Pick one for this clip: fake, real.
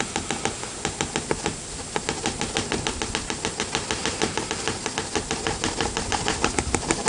real